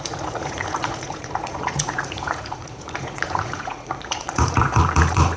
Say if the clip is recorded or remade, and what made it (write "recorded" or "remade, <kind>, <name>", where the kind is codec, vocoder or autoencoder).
remade, vocoder, Vocos